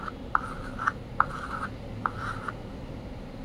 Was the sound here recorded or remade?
recorded